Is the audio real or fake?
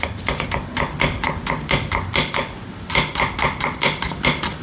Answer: real